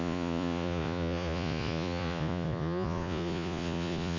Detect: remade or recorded remade